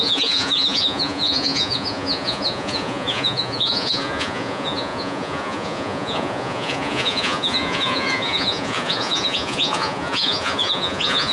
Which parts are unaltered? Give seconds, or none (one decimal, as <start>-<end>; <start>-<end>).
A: none